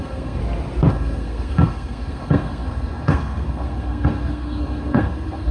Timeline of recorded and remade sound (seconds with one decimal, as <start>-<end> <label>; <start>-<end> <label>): 0.0-0.4 remade; 0.4-0.9 recorded; 0.9-5.5 remade